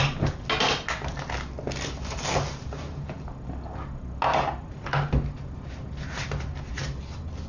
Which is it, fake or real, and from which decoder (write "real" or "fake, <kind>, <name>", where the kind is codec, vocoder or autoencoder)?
real